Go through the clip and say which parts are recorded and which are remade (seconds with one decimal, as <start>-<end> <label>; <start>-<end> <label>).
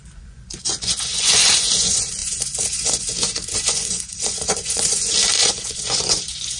0.0-6.6 remade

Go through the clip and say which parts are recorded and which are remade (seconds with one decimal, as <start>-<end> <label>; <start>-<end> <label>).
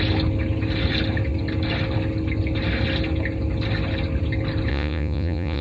0.0-4.7 recorded; 4.7-5.6 remade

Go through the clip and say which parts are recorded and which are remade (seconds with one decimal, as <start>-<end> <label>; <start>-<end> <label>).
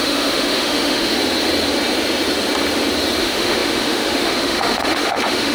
0.0-1.1 remade; 1.1-3.2 recorded; 3.2-5.5 remade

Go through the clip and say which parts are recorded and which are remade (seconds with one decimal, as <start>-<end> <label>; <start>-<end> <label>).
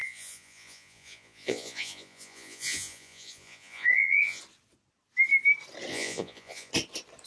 0.0-4.4 remade; 4.4-5.9 recorded; 5.9-6.7 remade; 6.7-7.3 recorded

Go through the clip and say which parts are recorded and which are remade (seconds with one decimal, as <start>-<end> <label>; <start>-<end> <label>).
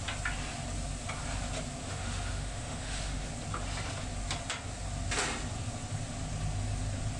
0.0-1.8 recorded; 1.8-3.3 remade; 3.3-7.2 recorded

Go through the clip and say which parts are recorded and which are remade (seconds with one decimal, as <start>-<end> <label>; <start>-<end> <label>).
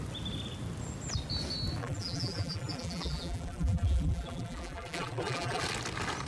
0.0-1.8 recorded; 1.8-5.6 remade; 5.6-6.3 recorded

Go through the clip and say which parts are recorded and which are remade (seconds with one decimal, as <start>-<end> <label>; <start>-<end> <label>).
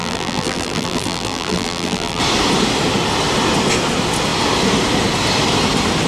0.0-2.2 remade; 2.2-6.1 recorded